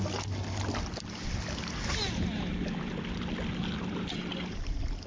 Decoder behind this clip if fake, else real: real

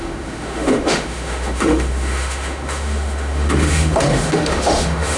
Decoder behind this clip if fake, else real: fake, autoencoder, DAC-VAE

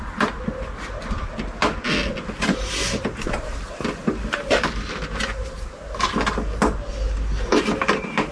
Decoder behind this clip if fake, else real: real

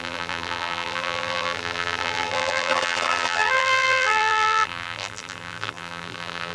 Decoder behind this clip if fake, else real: fake, vocoder, BigVGAN v2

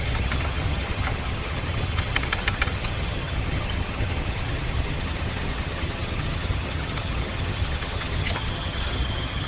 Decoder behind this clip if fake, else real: fake, vocoder, HiFi-GAN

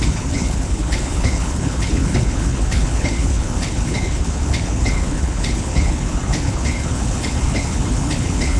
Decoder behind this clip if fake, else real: fake, codec, HILCodec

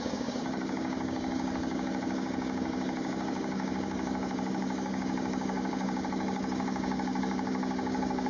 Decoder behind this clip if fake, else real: fake, codec, DAC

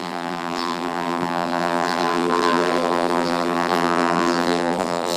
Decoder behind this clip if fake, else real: fake, vocoder, BigVGAN v2